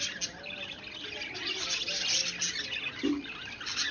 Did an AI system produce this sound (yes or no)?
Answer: no